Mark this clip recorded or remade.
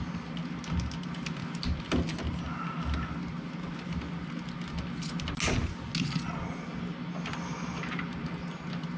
recorded